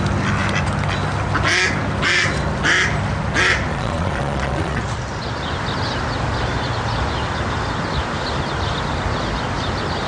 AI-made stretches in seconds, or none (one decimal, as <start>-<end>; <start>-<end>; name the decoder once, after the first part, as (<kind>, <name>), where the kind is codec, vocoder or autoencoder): 3.7-4.8 (vocoder, Vocos)